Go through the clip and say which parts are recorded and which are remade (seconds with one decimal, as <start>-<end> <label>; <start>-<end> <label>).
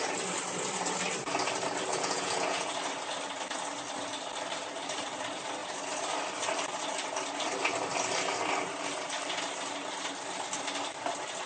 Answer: 0.0-1.9 recorded; 1.9-2.7 remade; 2.7-11.5 recorded